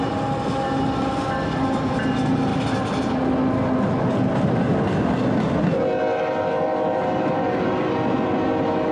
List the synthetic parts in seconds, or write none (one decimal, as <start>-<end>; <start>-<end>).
none